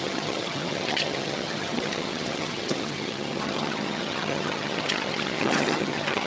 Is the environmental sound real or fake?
fake